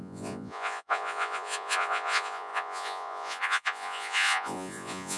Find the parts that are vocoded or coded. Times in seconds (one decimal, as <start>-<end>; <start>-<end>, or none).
0.0-5.2